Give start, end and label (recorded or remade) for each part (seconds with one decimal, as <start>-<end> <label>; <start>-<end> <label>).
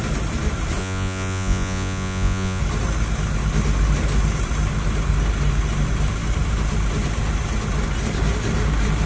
0.0-0.8 recorded; 0.8-2.6 remade; 2.6-9.1 recorded